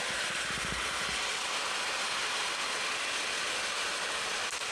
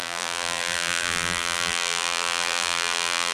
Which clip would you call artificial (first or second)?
second